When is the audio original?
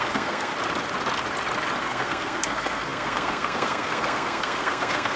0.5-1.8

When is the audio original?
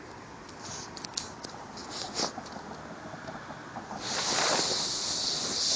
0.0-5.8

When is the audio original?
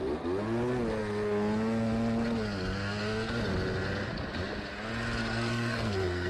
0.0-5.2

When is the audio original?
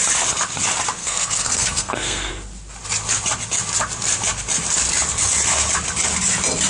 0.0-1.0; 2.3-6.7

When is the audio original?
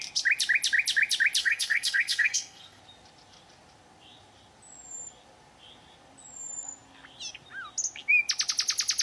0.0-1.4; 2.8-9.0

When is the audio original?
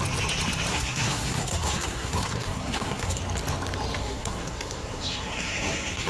0.0-0.7; 3.2-4.0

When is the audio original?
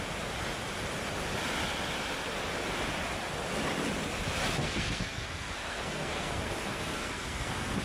0.0-4.6